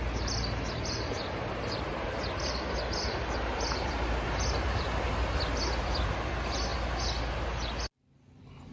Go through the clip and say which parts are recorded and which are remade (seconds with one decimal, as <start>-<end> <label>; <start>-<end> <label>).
0.0-8.7 recorded